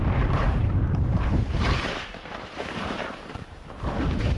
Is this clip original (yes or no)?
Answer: no